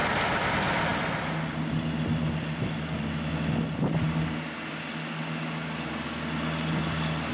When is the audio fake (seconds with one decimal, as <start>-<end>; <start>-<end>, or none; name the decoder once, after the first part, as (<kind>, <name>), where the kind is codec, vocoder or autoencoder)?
none